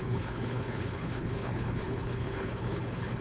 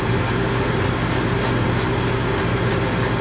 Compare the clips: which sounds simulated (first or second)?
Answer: first